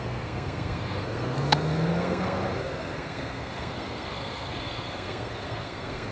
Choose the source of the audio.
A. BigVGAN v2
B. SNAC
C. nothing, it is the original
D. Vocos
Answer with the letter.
B